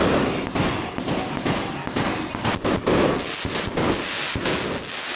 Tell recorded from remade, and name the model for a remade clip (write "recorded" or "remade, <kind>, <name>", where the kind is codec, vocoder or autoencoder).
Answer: recorded